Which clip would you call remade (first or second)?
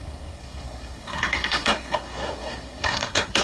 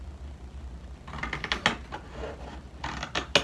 first